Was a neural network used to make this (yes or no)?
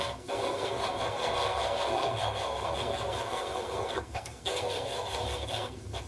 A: yes